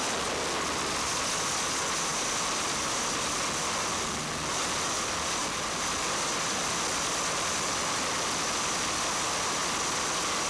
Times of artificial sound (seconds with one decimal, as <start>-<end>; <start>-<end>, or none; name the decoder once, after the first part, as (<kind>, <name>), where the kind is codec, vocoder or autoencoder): 2.1-3.1 (vocoder, BigVGAN v2)